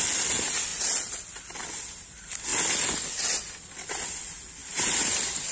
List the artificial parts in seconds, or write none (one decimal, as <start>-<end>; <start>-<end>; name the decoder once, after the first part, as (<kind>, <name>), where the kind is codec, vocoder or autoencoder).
none